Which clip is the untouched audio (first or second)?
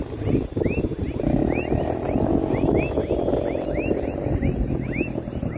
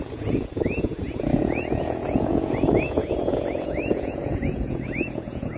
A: first